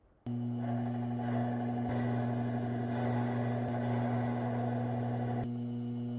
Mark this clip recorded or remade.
recorded